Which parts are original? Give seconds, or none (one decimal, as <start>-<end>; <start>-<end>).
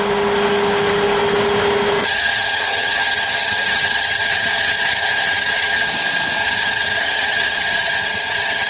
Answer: 0.0-2.0; 5.9-6.4